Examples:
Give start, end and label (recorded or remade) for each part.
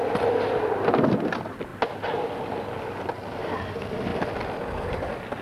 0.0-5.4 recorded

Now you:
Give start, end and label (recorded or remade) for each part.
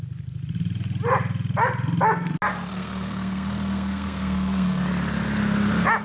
0.0-2.7 recorded; 2.7-4.8 remade; 4.8-6.0 recorded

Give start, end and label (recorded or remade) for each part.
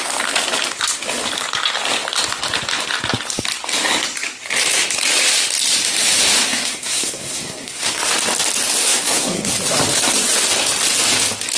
0.0-6.5 recorded; 6.5-8.1 remade; 8.1-8.8 recorded; 8.8-9.5 remade; 9.5-11.6 recorded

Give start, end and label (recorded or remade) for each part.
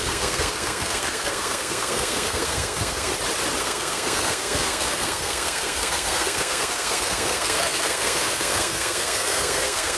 0.0-3.1 remade; 3.1-3.6 recorded; 3.6-10.0 remade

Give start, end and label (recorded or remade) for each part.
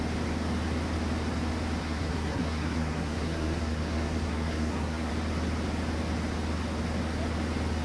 0.0-1.8 recorded; 1.8-5.1 remade; 5.1-7.8 recorded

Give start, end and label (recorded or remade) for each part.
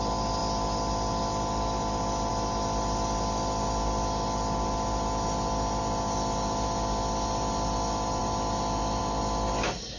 0.0-10.0 recorded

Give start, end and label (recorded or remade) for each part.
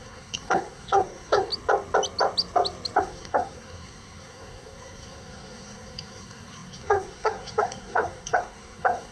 0.0-1.5 remade; 1.5-3.0 recorded; 3.0-9.1 remade